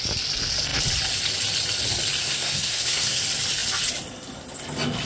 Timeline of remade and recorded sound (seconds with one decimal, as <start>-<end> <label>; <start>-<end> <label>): 0.0-2.2 recorded; 2.2-3.2 remade; 3.2-5.1 recorded